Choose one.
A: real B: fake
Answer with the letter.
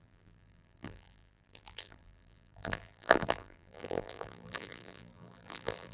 B